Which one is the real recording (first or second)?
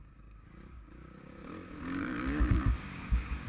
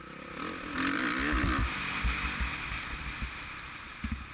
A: second